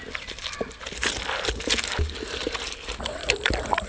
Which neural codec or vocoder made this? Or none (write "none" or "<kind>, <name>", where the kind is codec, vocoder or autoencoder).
none